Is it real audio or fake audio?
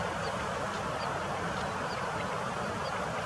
real